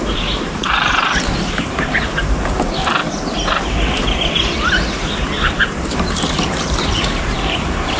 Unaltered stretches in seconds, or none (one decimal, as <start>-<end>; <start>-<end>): 3.0-5.7